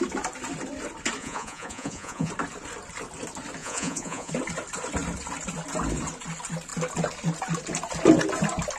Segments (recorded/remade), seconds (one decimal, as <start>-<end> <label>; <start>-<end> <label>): 0.0-1.2 recorded; 1.2-2.3 remade; 2.3-3.6 recorded; 3.6-4.3 remade; 4.3-8.8 recorded